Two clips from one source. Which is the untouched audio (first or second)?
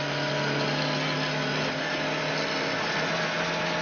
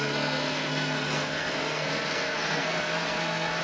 first